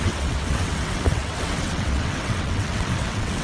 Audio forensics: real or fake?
fake